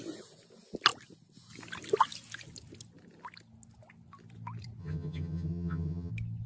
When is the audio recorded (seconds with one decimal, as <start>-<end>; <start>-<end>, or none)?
0.0-4.8; 6.1-6.5